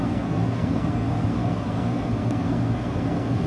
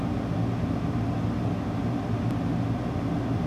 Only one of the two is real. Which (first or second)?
second